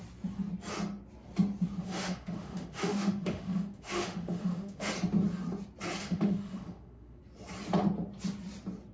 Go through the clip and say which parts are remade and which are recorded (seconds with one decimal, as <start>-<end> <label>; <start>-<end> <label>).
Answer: 0.0-1.8 recorded; 1.8-4.9 remade; 4.9-6.0 recorded; 6.0-7.2 remade; 7.2-8.9 recorded